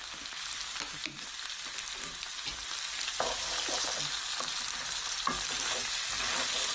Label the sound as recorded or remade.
recorded